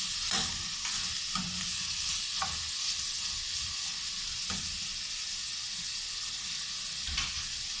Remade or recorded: recorded